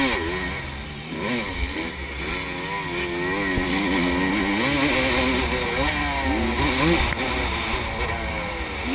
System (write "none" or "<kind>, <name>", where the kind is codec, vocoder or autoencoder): none